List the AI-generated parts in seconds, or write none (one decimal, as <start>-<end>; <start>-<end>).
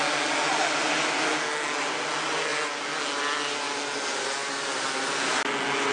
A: none